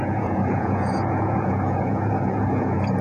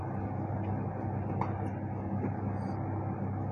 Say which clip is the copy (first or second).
first